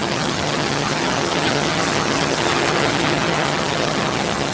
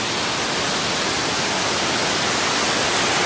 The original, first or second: second